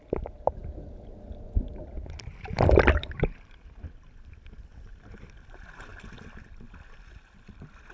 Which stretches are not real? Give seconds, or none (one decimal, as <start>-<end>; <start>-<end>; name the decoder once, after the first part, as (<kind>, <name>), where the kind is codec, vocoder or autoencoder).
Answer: 2.3-4.1 (vocoder, BigVGAN v2)

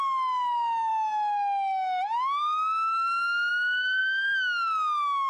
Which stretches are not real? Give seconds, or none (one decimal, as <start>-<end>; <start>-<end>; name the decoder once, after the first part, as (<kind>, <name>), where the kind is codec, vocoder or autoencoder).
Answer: none

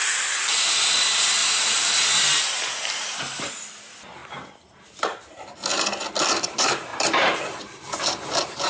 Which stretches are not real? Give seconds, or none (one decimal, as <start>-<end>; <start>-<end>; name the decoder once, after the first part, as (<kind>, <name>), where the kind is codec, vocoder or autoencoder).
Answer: 0.0-4.2 (vocoder, BigVGAN v2); 6.3-8.7

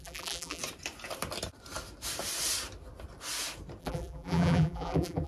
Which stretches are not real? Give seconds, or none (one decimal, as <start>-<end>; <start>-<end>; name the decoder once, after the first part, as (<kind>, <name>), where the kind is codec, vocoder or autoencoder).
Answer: 0.0-0.6 (vocoder, BigVGAN v2); 3.8-5.3

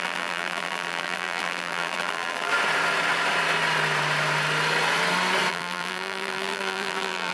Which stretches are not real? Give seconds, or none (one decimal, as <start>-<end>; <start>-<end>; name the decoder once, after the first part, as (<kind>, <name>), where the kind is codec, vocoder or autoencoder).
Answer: 0.0-2.5 (vocoder, BigVGAN v2); 5.5-7.3

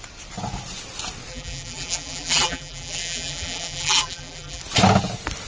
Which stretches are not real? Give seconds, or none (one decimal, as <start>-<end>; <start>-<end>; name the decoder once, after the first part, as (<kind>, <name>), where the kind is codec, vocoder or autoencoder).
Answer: 1.3-4.6 (vocoder, BigVGAN v2)